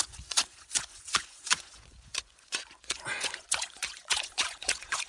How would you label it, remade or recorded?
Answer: remade